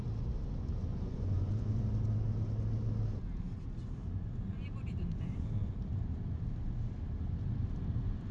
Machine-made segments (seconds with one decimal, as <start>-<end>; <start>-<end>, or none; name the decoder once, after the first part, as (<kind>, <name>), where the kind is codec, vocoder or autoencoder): 0.9-1.8 (vocoder, Vocos)